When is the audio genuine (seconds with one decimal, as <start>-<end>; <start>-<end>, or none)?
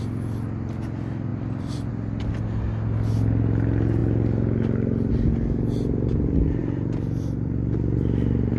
0.0-1.3; 1.9-6.6